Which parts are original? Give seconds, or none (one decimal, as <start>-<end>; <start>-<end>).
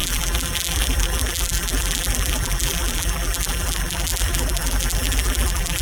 none